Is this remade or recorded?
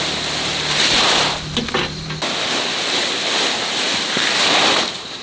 recorded